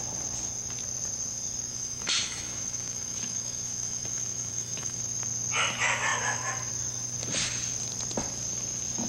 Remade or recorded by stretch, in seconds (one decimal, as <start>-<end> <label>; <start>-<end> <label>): 0.0-1.7 recorded; 1.7-5.0 remade; 5.0-9.1 recorded

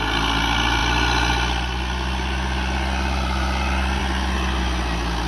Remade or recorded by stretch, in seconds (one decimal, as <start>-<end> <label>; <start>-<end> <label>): 0.0-5.3 recorded